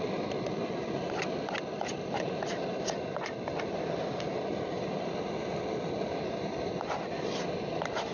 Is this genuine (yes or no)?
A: yes